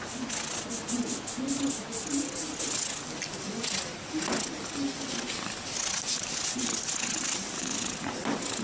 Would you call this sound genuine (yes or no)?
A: yes